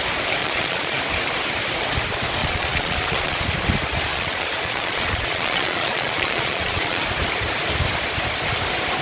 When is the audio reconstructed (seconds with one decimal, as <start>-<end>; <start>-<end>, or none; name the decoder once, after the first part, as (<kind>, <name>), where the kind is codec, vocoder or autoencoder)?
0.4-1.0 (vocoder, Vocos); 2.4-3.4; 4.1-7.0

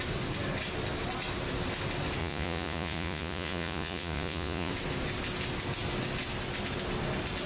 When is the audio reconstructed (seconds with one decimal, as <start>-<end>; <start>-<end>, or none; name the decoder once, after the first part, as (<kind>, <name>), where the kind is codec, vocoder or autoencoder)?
2.2-4.7 (vocoder, Vocos)

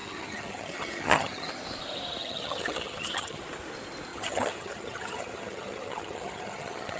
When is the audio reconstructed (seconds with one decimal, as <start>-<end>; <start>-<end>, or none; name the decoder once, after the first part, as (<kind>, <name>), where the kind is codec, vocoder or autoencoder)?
0.0-1.5 (vocoder, HiFi-GAN); 2.2-3.4; 4.1-7.0